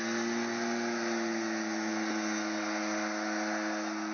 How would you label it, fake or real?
real